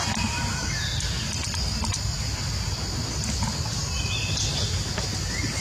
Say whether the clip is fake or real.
real